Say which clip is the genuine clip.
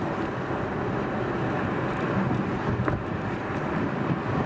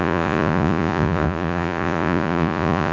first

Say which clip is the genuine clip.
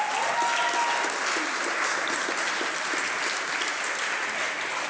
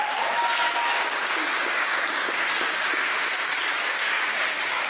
first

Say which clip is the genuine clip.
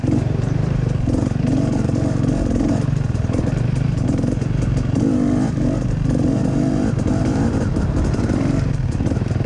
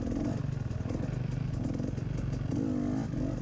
second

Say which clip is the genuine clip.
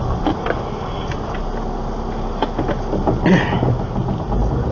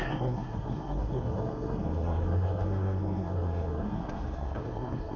first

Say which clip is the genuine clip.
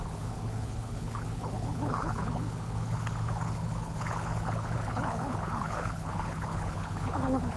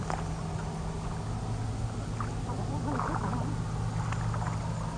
second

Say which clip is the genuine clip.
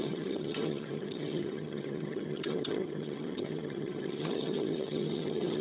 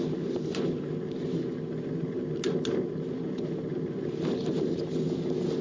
second